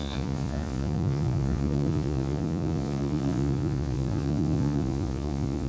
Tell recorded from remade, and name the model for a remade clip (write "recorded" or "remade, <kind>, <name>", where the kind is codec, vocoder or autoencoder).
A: remade, vocoder, Vocos